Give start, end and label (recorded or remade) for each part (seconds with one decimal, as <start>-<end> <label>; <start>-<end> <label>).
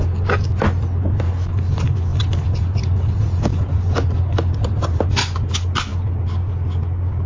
0.0-2.1 recorded; 2.1-5.0 remade; 5.0-7.3 recorded